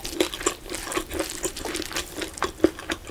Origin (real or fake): real